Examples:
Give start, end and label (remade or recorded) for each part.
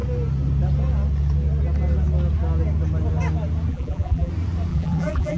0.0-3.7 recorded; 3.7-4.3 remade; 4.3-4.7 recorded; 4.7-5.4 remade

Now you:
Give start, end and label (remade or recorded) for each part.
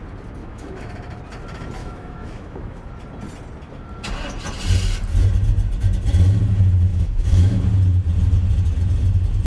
0.0-0.4 recorded; 0.4-0.9 remade; 0.9-1.8 recorded; 1.8-2.8 remade; 2.8-6.9 recorded; 6.9-7.6 remade; 7.6-9.5 recorded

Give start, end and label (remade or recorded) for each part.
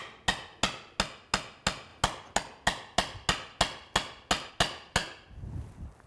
0.0-6.1 recorded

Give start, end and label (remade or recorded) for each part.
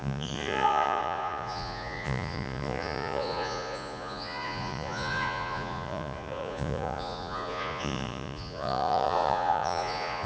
0.0-10.3 remade